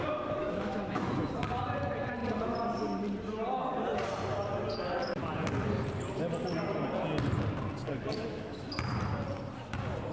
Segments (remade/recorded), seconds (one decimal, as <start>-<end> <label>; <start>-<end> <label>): 0.0-0.4 recorded; 0.4-1.3 remade; 1.3-7.9 recorded; 7.9-8.7 remade; 8.7-10.1 recorded